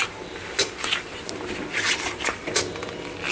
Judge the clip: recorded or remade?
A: recorded